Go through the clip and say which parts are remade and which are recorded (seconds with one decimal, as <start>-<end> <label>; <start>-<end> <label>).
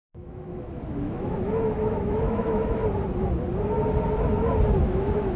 0.0-2.8 remade; 2.8-4.8 recorded; 4.8-5.4 remade